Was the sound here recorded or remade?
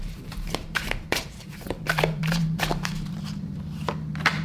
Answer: remade